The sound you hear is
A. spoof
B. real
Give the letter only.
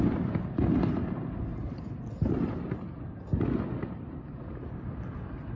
B